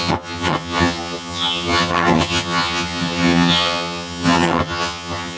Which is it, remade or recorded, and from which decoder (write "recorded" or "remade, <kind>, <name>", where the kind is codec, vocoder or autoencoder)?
remade, vocoder, HiFi-GAN